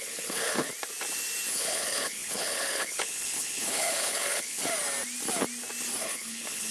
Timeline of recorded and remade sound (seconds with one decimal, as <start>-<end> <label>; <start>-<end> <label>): 0.0-0.7 remade; 0.7-1.5 recorded; 1.5-4.7 remade; 4.7-6.0 recorded; 6.0-6.7 remade